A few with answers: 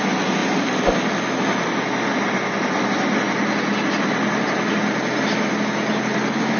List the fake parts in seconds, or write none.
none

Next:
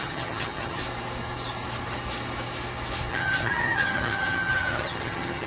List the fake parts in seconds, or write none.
0.0-0.8; 3.1-5.5

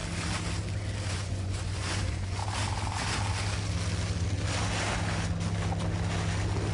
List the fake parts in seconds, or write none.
1.1-2.4

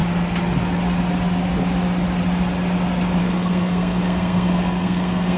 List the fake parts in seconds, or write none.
3.2-5.4

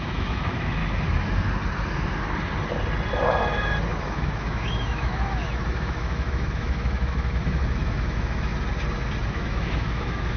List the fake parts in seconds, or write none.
0.0-0.8; 3.9-8.5; 9.3-10.4

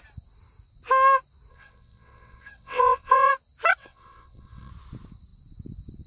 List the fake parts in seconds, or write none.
1.5-3.3; 3.8-4.7

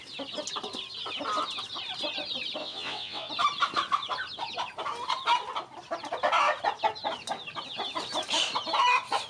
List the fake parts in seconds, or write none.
2.6-3.3